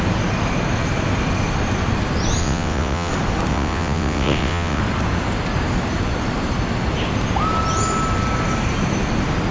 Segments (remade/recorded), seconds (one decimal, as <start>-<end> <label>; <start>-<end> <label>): 0.0-2.4 recorded; 2.4-3.1 remade; 3.1-3.5 recorded; 3.5-4.8 remade; 4.8-9.5 recorded